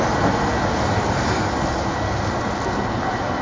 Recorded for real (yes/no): yes